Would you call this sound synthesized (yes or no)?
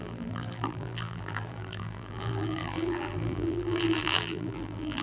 yes